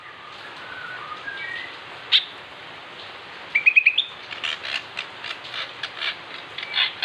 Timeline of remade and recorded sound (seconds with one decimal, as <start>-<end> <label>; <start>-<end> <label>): 0.0-7.0 recorded